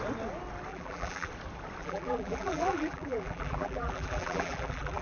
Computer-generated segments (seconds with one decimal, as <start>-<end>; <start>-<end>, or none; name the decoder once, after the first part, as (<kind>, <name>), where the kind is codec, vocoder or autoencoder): 0.7-1.3 (vocoder, BigVGAN v2); 1.8-5.0